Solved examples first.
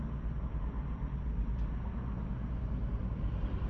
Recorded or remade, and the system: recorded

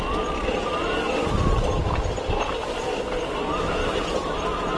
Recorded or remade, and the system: recorded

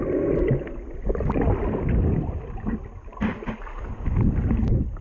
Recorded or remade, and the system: recorded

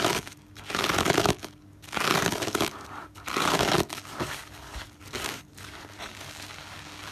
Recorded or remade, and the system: remade, codec, DAC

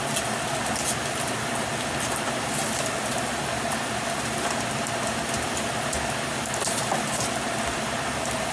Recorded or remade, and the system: recorded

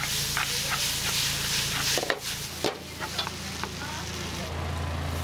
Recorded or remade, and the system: recorded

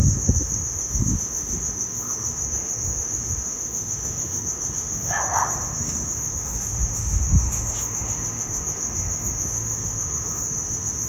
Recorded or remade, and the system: remade, autoencoder, DAC-VAE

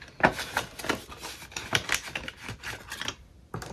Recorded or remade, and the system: recorded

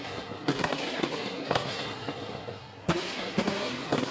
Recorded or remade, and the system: remade, codec, SNAC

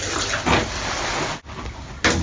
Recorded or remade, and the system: recorded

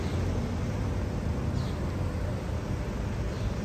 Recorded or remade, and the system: recorded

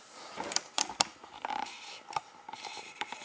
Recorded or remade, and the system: remade, vocoder, BigVGAN v2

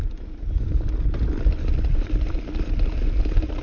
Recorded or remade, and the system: recorded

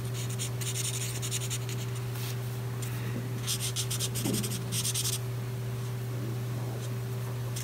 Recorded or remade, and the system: recorded